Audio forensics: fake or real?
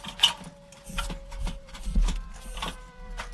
fake